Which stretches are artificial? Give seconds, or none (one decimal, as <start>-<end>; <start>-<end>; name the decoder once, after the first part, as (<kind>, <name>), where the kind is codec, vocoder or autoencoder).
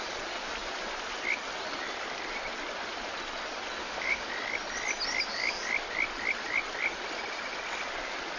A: 3.8-4.3 (autoencoder, DAC-VAE)